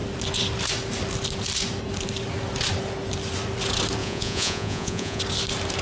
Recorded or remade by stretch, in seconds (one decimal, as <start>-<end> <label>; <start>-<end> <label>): 0.0-4.0 recorded; 4.0-5.2 remade; 5.2-5.8 recorded

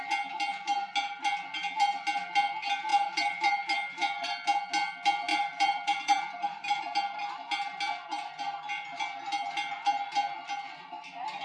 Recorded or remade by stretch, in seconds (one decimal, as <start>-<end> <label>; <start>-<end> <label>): 0.0-2.9 recorded; 2.9-4.3 remade; 4.3-5.3 recorded; 5.3-6.8 remade; 6.8-11.4 recorded

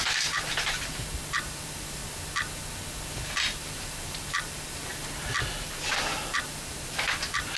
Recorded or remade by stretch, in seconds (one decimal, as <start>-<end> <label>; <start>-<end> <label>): 0.0-2.0 remade; 2.0-3.6 recorded; 3.6-4.9 remade; 4.9-6.0 recorded; 6.0-7.6 remade

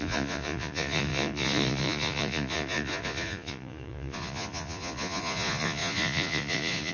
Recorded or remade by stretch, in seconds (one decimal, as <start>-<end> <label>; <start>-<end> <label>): 0.0-6.9 remade

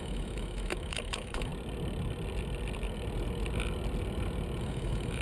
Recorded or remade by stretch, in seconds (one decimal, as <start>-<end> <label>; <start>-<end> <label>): 0.0-1.5 remade; 1.5-4.6 recorded; 4.6-5.2 remade